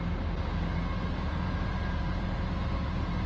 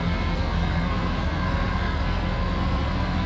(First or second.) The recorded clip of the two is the first